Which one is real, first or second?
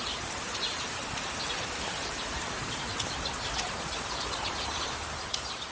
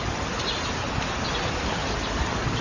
second